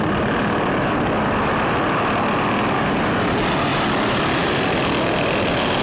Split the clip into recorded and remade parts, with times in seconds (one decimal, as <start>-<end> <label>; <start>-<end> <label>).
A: 0.0-5.8 recorded